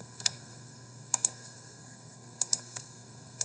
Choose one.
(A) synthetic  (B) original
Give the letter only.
A